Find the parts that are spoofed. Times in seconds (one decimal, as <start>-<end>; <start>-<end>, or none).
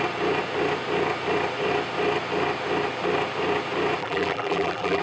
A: 4.0-5.0